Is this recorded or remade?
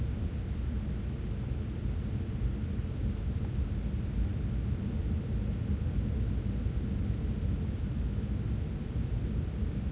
recorded